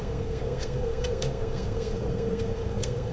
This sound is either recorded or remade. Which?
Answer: remade